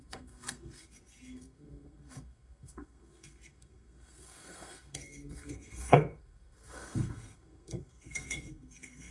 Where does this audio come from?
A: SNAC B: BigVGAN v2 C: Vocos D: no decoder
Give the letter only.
A